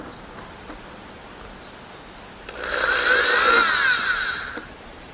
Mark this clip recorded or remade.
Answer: recorded